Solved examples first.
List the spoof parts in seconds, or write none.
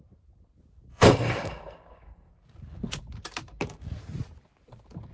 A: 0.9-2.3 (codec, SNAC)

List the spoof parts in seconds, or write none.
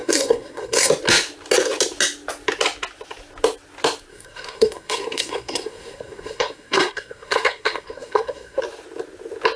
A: 0.0-0.9 (codec, SNAC); 4.1-8.6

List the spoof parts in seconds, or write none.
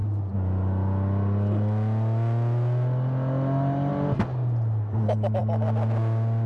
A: none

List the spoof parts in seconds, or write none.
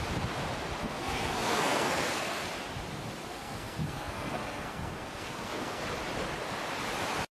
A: 0.8-2.5 (codec, SNAC); 3.3-5.8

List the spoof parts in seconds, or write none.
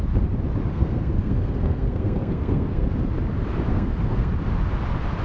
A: 0.7-2.9 (codec, SNAC); 3.7-4.3